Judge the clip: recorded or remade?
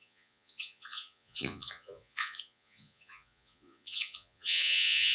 remade